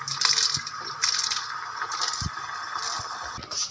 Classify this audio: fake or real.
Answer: real